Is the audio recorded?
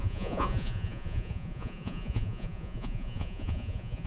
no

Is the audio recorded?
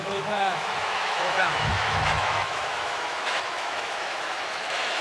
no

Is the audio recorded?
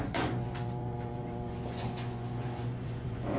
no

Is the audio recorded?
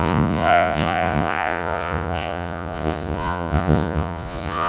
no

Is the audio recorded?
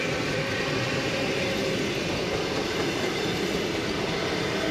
yes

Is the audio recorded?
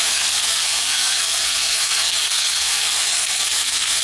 no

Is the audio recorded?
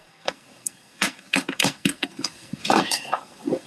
no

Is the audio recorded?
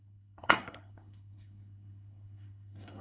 no